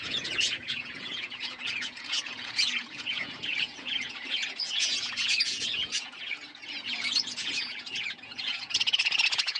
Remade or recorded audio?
remade